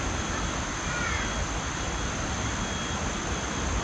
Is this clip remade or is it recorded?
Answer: recorded